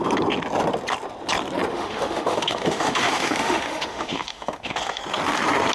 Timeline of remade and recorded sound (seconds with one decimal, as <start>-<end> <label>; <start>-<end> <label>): 0.0-1.7 recorded; 1.7-5.0 remade; 5.0-5.7 recorded